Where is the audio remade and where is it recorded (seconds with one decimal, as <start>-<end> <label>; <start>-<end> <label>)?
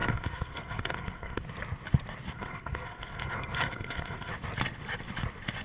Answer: 0.0-1.4 remade; 1.4-2.3 recorded; 2.3-4.3 remade; 4.3-5.6 recorded